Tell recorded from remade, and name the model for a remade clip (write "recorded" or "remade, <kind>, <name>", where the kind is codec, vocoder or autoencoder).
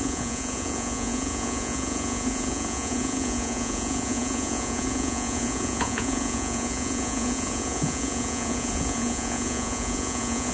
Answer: remade, vocoder, Vocos